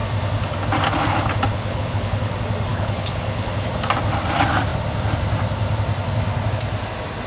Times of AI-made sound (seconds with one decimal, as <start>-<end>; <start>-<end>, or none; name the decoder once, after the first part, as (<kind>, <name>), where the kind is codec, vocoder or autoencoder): 1.5-2.3 (codec, HILCodec); 2.7-3.7